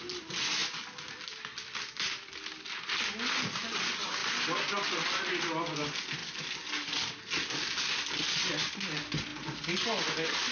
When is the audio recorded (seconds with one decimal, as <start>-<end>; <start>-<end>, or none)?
0.0-10.5